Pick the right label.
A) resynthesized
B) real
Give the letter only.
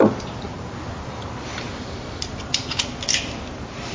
B